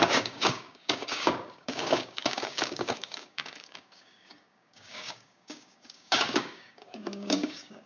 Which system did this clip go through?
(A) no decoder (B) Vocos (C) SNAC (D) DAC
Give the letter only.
D